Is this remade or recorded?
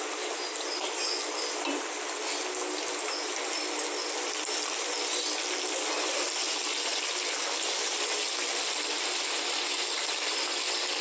recorded